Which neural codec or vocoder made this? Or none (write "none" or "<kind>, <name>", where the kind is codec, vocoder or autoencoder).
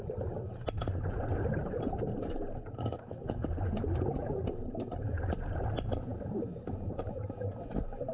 vocoder, BigVGAN v2